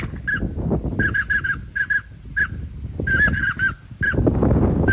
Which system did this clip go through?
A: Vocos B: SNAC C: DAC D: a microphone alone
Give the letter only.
D